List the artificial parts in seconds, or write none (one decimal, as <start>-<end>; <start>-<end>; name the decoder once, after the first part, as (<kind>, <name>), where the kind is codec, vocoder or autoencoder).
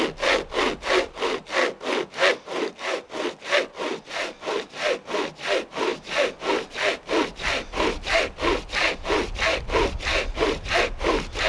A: none